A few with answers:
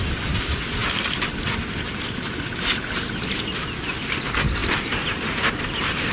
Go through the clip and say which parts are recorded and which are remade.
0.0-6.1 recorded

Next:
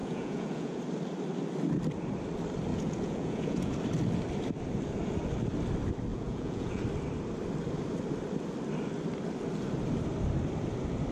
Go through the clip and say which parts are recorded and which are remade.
0.0-0.8 remade; 0.8-2.7 recorded; 2.7-3.7 remade; 3.7-6.1 recorded; 6.1-6.8 remade; 6.8-11.1 recorded

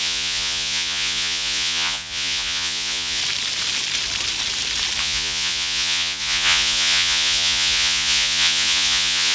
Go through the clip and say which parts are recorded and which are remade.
0.0-3.2 remade; 3.2-5.0 recorded; 5.0-9.3 remade

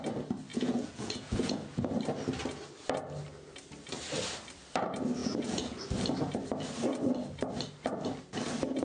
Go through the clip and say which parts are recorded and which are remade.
0.0-0.5 recorded; 0.5-1.8 remade; 1.8-5.2 recorded; 5.2-5.8 remade; 5.8-8.8 recorded

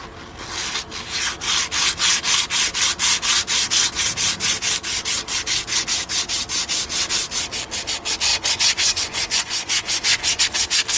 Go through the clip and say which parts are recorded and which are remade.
0.0-8.3 recorded; 8.3-10.4 remade; 10.4-11.0 recorded

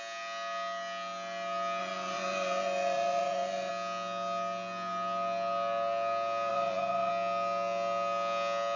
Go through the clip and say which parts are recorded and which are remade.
0.0-1.8 recorded; 1.8-3.7 remade; 3.7-6.5 recorded; 6.5-7.1 remade; 7.1-8.8 recorded